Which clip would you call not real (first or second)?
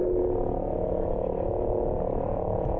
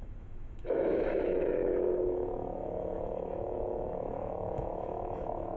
second